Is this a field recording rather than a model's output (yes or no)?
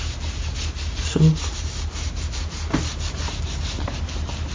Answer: yes